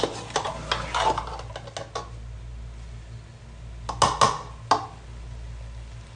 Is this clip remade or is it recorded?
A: recorded